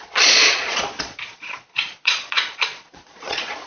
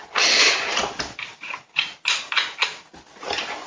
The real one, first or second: second